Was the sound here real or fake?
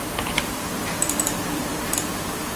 fake